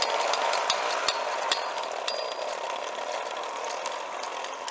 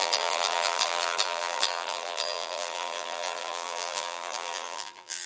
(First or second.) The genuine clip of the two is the first